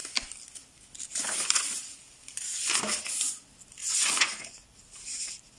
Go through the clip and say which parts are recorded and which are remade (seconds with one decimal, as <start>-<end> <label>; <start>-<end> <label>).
0.0-3.8 recorded; 3.8-4.7 remade; 4.7-5.6 recorded